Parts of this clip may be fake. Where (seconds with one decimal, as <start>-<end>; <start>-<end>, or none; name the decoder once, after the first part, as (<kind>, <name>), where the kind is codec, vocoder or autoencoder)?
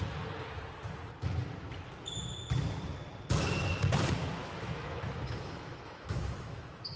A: 4.4-7.0 (autoencoder, DAC-VAE)